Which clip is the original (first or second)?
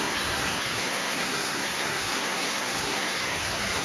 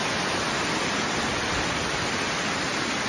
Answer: second